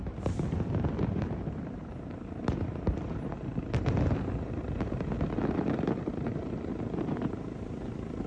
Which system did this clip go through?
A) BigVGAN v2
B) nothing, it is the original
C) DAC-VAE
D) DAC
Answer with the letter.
A